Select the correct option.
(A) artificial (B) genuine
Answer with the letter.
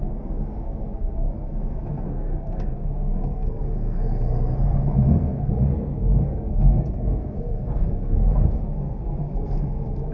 A